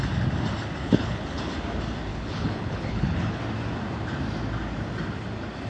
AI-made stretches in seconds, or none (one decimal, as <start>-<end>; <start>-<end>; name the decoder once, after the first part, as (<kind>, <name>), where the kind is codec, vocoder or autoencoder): 0.8-1.4 (codec, HILCodec); 2.1-3.4